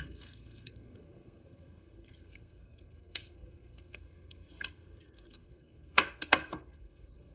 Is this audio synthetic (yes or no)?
yes